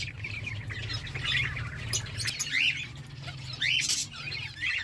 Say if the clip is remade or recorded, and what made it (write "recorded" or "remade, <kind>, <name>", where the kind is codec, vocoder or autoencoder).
recorded